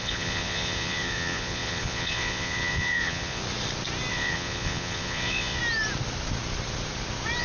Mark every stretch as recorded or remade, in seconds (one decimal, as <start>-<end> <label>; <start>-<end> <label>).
0.0-3.4 remade; 3.4-4.1 recorded; 4.1-5.6 remade; 5.6-7.4 recorded